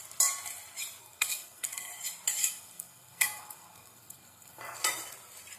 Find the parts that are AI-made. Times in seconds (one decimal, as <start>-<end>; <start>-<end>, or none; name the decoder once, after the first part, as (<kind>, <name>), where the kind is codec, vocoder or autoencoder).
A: 1.0-1.9 (codec, SNAC); 2.4-4.8